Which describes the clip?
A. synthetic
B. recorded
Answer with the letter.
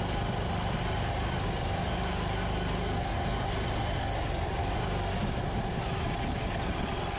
B